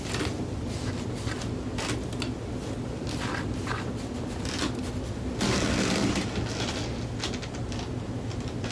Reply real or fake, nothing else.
real